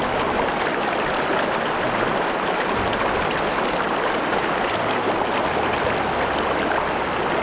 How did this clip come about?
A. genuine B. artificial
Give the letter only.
A